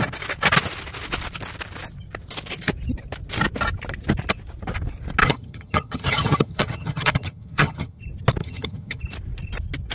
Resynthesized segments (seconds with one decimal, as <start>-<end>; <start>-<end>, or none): 5.2-8.0; 8.4-9.0